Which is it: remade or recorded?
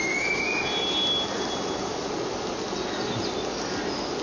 recorded